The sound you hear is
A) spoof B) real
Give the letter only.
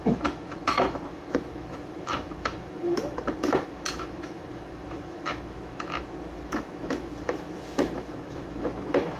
A